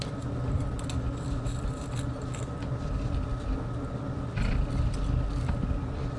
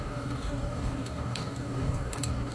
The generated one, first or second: second